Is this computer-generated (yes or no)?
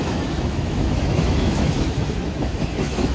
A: yes